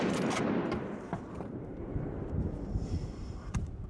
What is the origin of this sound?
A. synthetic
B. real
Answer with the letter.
A